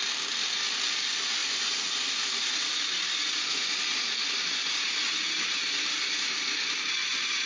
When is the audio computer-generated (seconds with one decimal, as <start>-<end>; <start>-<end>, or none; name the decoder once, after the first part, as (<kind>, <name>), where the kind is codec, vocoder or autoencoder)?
none